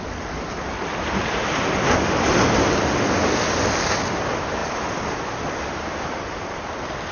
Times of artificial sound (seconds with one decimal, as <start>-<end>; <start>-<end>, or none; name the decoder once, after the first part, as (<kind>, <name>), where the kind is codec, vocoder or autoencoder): none